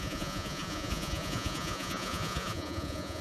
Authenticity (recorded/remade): remade